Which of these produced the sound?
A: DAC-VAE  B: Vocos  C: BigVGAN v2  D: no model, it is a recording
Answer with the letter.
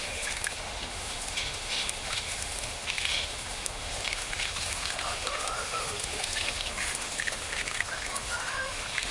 A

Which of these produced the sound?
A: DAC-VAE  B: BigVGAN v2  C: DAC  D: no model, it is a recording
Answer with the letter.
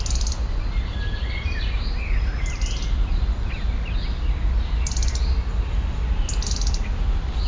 D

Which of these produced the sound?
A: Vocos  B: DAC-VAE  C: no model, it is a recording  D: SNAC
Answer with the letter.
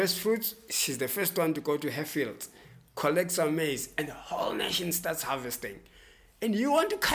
C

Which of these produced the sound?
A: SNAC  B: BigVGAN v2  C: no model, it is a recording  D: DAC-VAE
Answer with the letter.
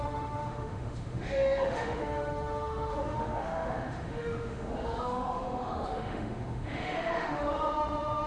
D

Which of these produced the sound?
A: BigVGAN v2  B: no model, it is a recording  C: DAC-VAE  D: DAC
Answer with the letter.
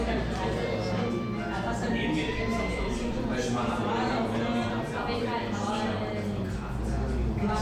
B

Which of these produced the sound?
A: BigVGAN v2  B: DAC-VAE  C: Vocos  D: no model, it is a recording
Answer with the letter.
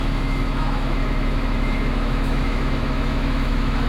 B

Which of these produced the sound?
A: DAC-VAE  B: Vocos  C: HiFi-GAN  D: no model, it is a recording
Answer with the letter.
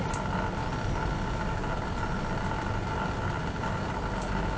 D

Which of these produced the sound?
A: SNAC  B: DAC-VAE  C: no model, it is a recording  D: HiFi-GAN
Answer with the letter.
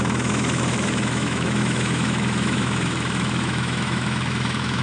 B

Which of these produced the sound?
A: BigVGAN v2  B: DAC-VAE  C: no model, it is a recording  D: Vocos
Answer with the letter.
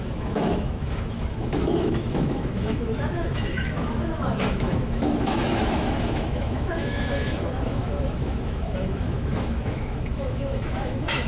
B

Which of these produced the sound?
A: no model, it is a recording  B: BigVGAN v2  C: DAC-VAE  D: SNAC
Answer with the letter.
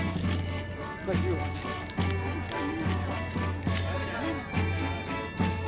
A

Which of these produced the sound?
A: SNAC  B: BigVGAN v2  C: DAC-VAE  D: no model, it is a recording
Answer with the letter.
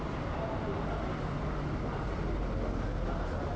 D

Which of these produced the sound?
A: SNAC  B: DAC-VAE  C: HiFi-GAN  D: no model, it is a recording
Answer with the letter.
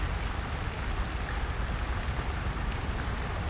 D